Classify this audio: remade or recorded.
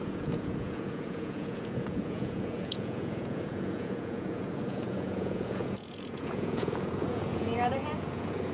remade